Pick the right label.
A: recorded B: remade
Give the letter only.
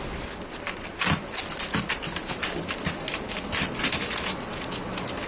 A